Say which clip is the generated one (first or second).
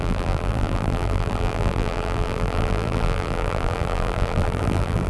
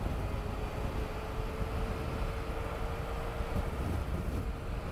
first